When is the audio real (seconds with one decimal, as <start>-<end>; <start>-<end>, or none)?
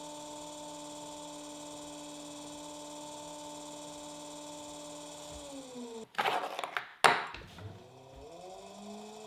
0.0-9.3